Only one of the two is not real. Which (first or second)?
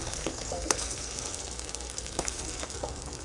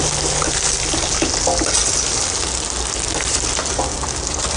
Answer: first